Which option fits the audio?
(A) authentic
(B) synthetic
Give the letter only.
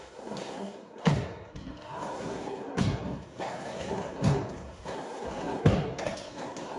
B